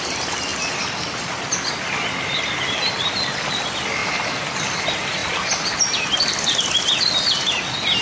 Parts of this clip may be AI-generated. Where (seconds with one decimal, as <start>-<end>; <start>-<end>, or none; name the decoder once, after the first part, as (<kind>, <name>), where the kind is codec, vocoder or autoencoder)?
none